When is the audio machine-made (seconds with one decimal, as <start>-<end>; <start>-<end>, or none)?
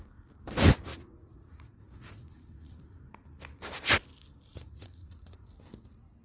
0.9-3.0; 4.5-5.5